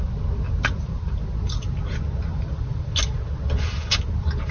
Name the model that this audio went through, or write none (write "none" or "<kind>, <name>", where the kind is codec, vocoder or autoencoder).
none